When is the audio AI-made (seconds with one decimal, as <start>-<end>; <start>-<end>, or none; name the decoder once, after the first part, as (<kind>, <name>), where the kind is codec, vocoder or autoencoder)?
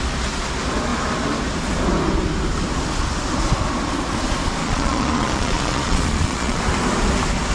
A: 4.6-6.6 (vocoder, Vocos)